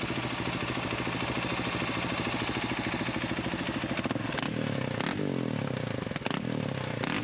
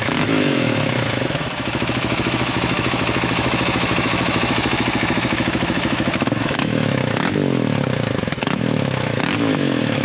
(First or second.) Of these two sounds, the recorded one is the first